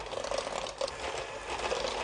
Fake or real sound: real